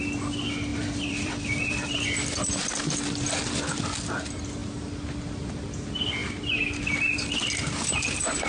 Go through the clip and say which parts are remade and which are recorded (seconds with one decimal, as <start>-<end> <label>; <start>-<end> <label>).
0.0-0.7 recorded; 0.7-1.9 remade; 1.9-8.5 recorded